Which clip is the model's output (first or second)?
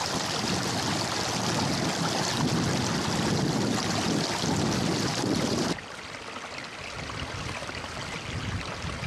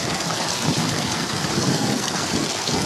second